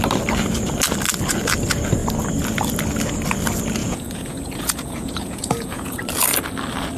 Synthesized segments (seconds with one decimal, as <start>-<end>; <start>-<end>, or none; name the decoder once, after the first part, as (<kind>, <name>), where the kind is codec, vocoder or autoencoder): 3.8-6.0 (vocoder, Vocos)